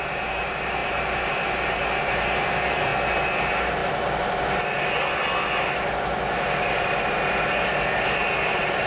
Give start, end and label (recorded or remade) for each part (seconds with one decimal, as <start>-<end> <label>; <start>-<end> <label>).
0.0-0.8 remade; 0.8-1.7 recorded; 1.7-2.9 remade; 2.9-3.4 recorded; 3.4-3.8 remade; 3.8-8.1 recorded; 8.1-8.9 remade